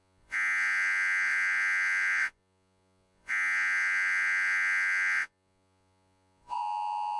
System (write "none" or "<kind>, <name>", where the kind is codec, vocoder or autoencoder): vocoder, Vocos